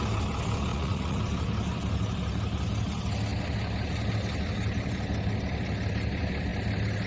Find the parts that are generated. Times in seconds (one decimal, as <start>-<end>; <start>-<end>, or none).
0.7-1.2